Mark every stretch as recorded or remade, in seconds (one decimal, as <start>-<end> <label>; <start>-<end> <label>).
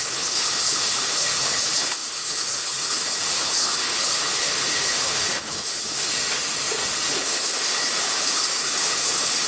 0.0-6.1 remade; 6.1-7.1 recorded; 7.1-9.5 remade